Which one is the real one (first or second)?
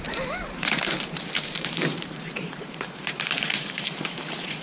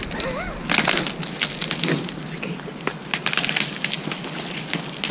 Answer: second